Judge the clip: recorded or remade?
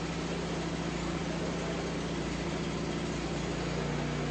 recorded